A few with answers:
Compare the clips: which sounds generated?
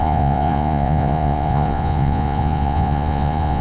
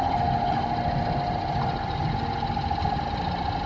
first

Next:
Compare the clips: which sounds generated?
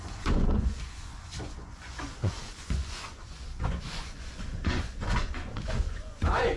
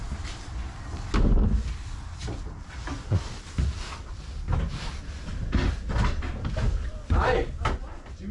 first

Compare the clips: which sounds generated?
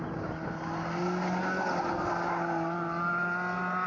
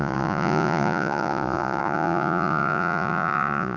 second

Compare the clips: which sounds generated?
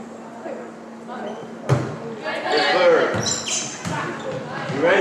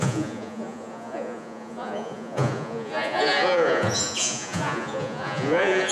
second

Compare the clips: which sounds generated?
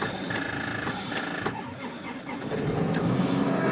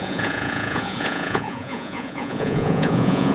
second